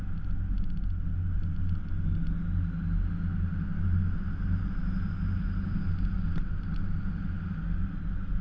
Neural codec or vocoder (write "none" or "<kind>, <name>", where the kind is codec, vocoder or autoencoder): none